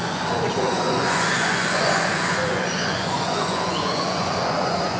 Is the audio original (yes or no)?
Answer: no